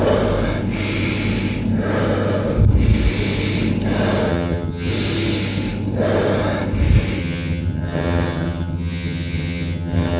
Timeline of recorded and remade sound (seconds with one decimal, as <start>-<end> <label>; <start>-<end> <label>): 0.0-4.3 recorded; 4.3-4.9 remade; 4.9-7.2 recorded; 7.2-10.2 remade